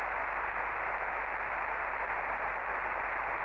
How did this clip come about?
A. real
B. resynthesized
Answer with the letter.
A